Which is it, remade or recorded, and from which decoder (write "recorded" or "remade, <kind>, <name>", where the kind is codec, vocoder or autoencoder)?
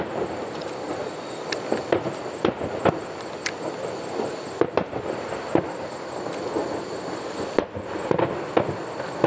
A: recorded